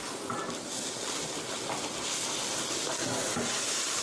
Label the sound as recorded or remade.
recorded